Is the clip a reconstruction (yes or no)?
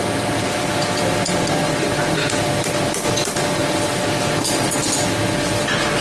no